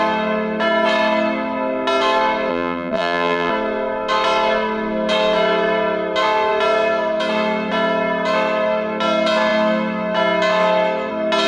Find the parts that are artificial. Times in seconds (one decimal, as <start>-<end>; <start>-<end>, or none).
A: 2.5-3.5